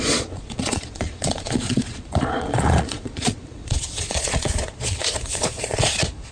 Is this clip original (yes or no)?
no